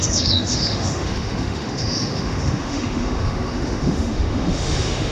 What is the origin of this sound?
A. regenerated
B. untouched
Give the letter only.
A